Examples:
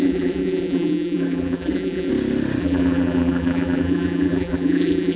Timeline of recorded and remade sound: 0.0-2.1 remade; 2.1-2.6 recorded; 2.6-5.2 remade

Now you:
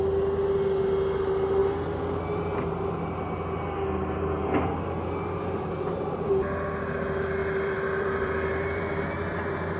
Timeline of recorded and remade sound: 0.0-7.4 recorded; 7.4-8.8 remade; 8.8-9.8 recorded

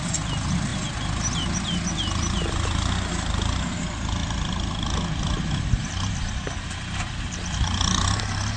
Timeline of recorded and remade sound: 0.0-0.7 remade; 0.7-2.5 recorded; 2.5-4.2 remade; 4.2-6.8 recorded; 6.8-8.6 remade

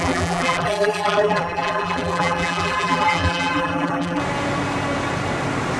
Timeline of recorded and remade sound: 0.0-4.2 remade; 4.2-5.8 recorded

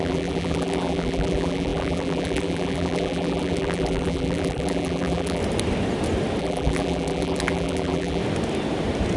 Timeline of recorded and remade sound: 0.0-5.4 remade; 5.4-6.4 recorded; 6.4-8.2 remade; 8.2-9.2 recorded

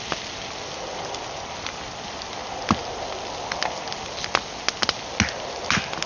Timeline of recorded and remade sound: 0.0-6.1 recorded

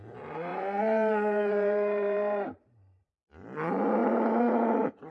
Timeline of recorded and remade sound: 0.0-0.5 recorded; 0.5-3.1 remade; 3.1-4.0 recorded; 4.0-5.1 remade